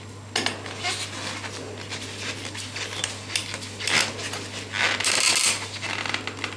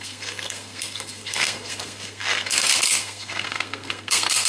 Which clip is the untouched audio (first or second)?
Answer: first